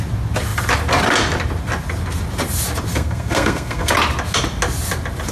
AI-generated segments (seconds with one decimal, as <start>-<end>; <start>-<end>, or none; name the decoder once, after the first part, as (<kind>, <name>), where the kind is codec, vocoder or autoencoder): 2.9-3.9 (codec, SNAC)